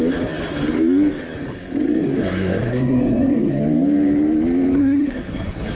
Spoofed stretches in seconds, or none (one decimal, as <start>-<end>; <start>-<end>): 2.0-3.6; 4.8-5.7